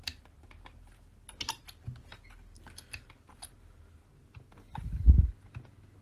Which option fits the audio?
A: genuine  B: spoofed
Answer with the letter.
A